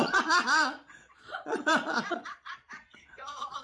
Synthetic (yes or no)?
yes